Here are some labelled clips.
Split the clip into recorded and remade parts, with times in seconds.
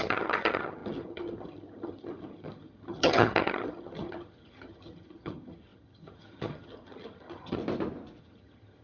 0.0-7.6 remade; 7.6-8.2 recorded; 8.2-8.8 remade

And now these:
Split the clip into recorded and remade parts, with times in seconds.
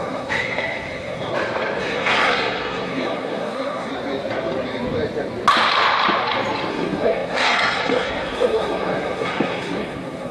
0.0-1.3 remade; 1.3-1.8 recorded; 1.8-3.9 remade; 3.9-6.7 recorded; 6.7-10.3 remade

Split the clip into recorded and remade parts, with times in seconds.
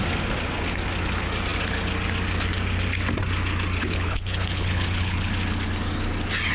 0.0-3.8 recorded; 3.8-5.3 remade; 5.3-6.5 recorded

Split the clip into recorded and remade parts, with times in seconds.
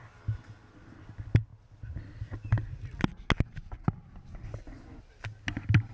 0.0-5.9 recorded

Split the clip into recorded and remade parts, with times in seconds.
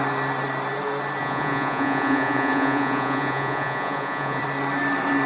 0.0-1.2 recorded; 1.2-4.4 remade; 4.4-5.3 recorded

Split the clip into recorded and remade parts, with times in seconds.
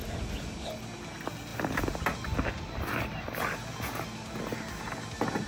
0.0-5.5 recorded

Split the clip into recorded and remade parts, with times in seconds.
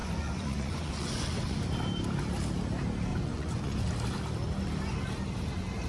0.0-1.6 remade; 1.6-3.1 recorded; 3.1-3.9 remade; 3.9-5.9 recorded